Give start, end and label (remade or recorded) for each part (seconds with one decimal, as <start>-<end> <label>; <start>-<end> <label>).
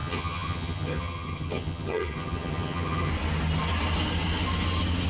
0.0-3.1 remade; 3.1-5.1 recorded